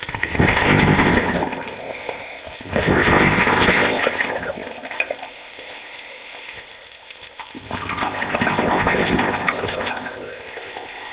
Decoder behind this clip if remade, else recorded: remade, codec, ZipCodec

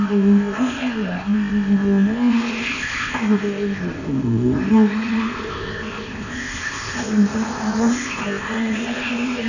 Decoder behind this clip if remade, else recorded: remade, codec, ZipCodec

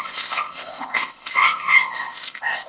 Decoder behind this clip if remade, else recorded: remade, codec, ZipCodec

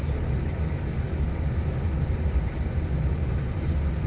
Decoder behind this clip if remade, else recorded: recorded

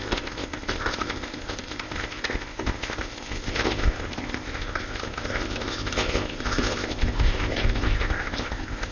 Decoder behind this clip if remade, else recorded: remade, codec, ZipCodec